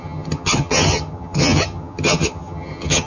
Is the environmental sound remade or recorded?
remade